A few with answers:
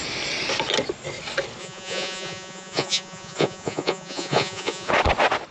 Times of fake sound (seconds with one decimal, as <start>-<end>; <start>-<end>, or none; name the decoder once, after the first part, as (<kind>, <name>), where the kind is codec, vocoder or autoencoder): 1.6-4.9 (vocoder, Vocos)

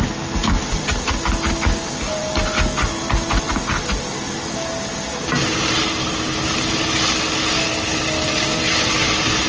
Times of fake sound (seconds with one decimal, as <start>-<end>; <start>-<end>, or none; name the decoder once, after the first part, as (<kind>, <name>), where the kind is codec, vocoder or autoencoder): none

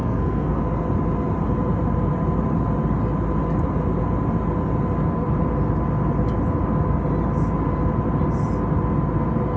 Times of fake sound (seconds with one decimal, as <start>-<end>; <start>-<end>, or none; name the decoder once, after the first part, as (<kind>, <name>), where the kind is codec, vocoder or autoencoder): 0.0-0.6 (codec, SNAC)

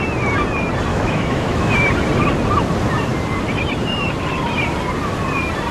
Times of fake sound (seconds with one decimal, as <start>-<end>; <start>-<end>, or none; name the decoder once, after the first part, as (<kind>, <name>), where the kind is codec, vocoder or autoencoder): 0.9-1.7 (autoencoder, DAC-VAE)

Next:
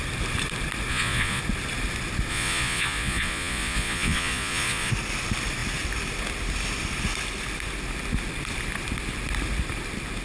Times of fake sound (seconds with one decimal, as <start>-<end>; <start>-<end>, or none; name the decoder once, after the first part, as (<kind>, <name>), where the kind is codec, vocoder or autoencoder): 0.9-1.4 (vocoder, Vocos); 2.3-4.9

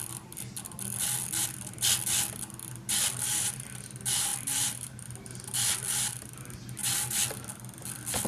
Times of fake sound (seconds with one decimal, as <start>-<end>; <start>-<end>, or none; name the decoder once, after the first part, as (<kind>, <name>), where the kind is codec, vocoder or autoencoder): none

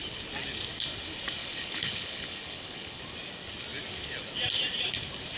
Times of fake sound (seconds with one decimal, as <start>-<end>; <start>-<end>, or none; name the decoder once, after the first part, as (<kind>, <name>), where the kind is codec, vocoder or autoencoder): 1.4-3.0 (codec, HILCodec)

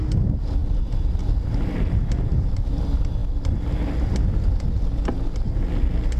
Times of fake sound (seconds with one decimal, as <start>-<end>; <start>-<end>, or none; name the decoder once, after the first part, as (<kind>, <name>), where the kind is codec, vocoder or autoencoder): 2.3-2.8 (vocoder, BigVGAN v2)